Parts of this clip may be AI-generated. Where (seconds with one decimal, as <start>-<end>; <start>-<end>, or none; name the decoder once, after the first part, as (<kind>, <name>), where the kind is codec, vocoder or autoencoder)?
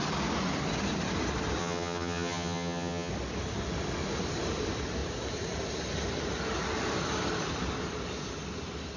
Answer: 1.6-3.1 (vocoder, HiFi-GAN)